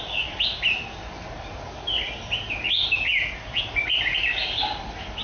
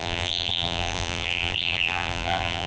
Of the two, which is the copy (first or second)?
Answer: second